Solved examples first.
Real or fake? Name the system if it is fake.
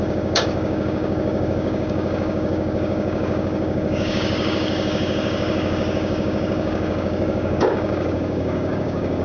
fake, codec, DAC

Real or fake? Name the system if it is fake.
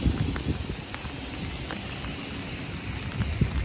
real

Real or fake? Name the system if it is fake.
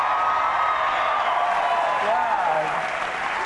fake, vocoder, BigVGAN v2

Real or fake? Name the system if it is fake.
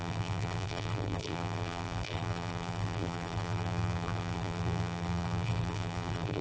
fake, vocoder, BigVGAN v2